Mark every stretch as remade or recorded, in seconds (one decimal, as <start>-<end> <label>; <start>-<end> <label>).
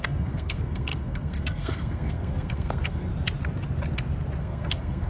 0.0-3.1 remade; 3.1-4.4 recorded; 4.4-5.1 remade